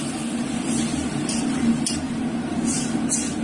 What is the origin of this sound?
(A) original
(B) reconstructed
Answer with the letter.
A